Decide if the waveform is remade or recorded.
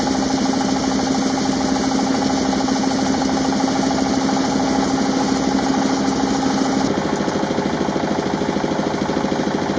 recorded